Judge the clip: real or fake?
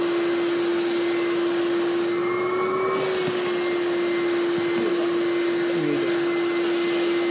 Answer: real